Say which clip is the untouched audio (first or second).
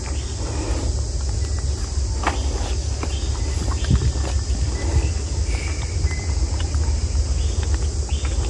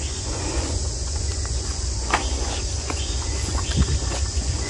first